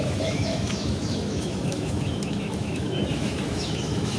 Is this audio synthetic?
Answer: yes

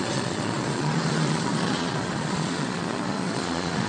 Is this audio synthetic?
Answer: yes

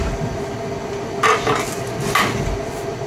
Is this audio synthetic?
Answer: no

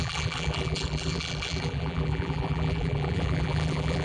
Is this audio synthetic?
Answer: yes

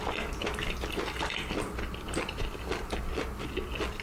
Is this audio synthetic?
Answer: no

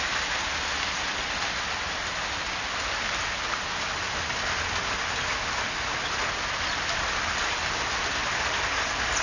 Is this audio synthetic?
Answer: no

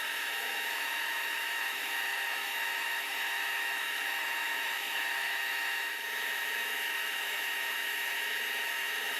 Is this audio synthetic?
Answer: yes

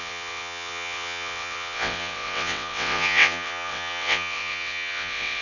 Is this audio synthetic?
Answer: yes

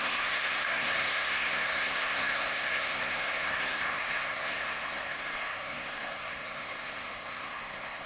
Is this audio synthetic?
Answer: yes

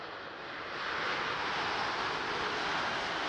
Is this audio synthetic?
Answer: no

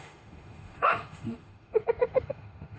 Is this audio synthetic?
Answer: yes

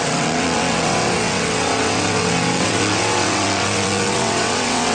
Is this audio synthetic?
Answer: yes